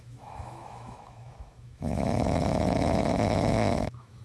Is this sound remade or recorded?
remade